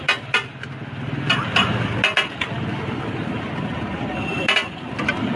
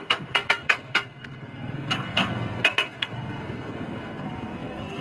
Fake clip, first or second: second